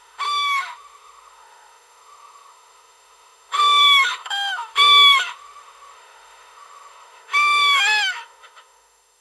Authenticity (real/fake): fake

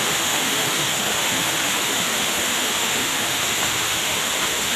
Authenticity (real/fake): fake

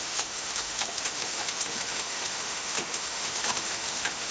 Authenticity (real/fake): fake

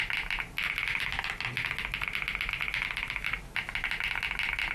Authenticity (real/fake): real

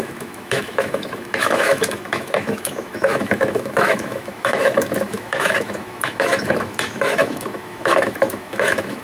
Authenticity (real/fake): fake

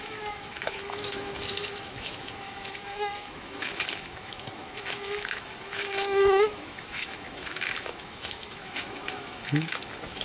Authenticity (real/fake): fake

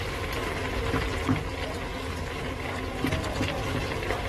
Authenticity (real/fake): real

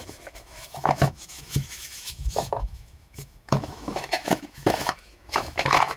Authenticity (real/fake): fake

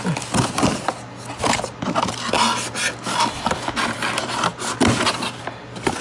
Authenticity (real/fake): real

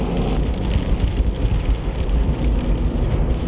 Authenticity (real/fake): real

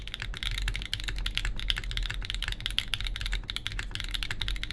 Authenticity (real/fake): real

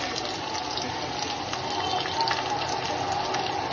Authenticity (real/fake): real